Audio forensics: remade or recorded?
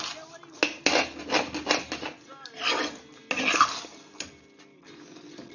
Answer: recorded